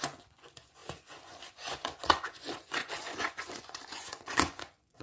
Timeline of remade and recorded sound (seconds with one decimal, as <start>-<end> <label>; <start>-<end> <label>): 0.0-5.0 remade